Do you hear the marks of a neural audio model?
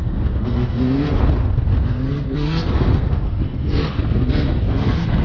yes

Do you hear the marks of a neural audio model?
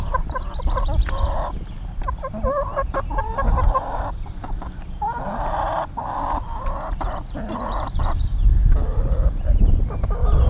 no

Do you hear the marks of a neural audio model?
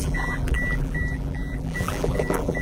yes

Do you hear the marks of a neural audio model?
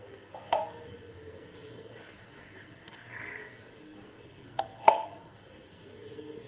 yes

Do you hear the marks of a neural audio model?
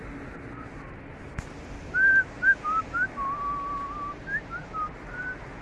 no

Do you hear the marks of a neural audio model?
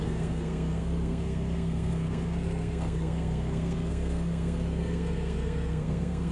yes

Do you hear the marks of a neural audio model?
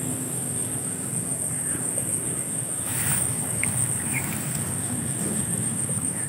yes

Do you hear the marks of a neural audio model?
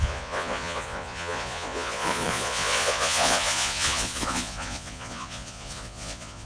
yes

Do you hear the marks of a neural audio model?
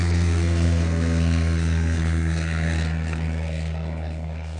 yes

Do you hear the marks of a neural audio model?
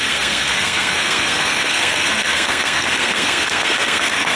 yes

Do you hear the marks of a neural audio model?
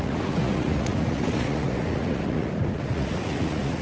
yes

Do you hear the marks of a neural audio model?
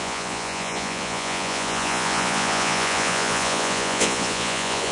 yes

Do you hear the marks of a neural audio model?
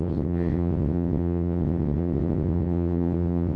yes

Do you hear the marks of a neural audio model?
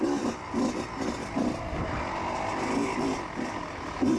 no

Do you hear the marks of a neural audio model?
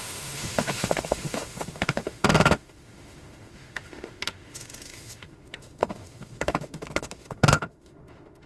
yes